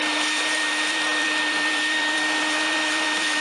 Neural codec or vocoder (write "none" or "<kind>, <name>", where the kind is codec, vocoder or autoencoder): vocoder, BigVGAN v2